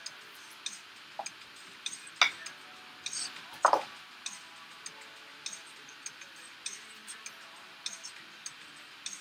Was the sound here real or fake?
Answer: real